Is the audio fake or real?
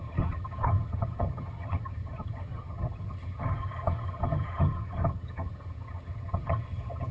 fake